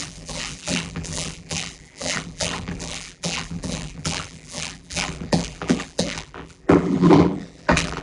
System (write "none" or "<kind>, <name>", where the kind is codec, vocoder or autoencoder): vocoder, BigVGAN v2